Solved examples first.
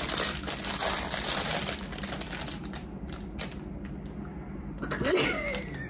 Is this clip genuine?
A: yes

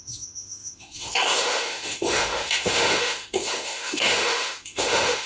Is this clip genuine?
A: no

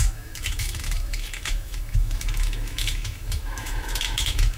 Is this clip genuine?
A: no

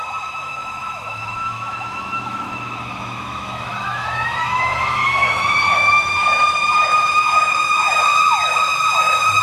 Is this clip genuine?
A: no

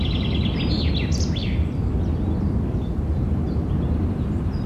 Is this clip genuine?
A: yes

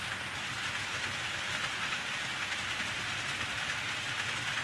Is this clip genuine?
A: yes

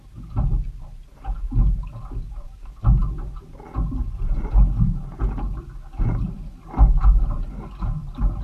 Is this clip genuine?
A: yes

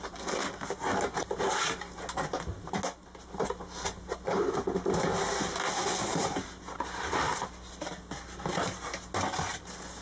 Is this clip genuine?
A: yes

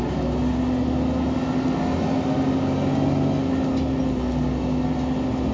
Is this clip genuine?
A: yes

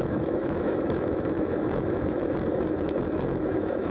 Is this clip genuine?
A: no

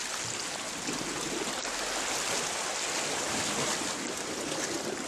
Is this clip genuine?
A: yes